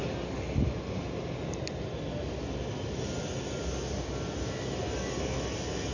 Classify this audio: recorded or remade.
recorded